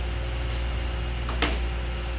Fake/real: real